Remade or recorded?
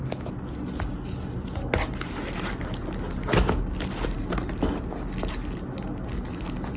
recorded